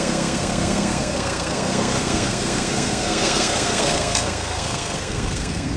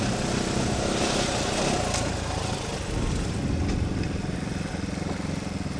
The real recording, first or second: second